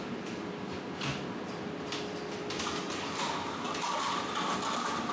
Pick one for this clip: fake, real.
real